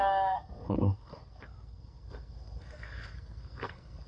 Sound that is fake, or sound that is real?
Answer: fake